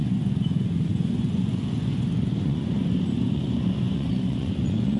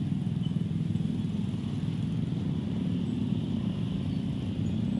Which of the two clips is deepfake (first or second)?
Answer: first